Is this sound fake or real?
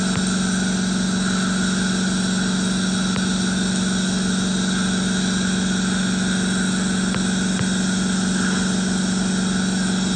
real